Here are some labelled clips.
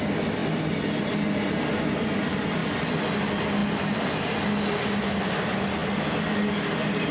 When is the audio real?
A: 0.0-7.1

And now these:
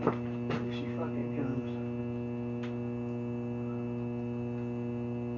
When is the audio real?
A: 0.0-5.4

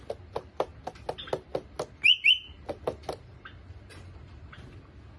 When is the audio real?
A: 0.0-5.2

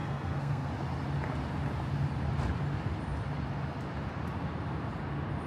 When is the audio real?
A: 0.7-5.5

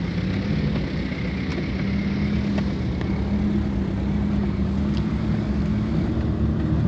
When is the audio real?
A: 0.0-6.9